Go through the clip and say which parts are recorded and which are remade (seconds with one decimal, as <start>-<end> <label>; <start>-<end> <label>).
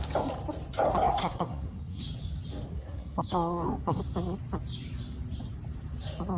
0.0-1.2 recorded; 1.2-2.0 remade; 2.0-2.7 recorded; 2.7-4.0 remade; 4.0-6.4 recorded